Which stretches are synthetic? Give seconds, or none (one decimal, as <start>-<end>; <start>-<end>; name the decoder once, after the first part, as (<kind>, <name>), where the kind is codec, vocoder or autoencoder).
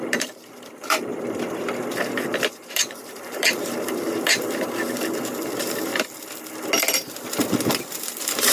0.0-1.1 (vocoder, BigVGAN v2); 2.5-5.9; 8.0-8.5